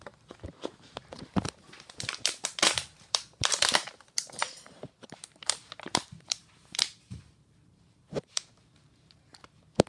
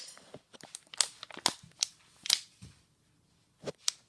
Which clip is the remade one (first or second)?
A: first